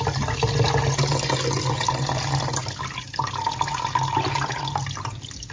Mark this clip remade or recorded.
recorded